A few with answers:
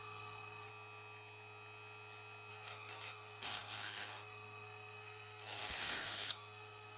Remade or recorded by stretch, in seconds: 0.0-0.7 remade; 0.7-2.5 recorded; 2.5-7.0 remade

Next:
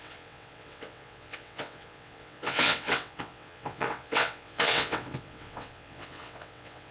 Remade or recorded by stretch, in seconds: 0.0-6.9 remade

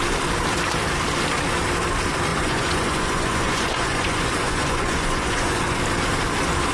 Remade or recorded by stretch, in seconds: 0.0-2.3 recorded; 2.3-5.8 remade; 5.8-6.7 recorded